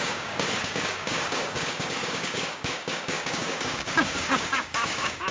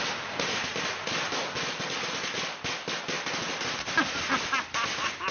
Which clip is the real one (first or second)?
second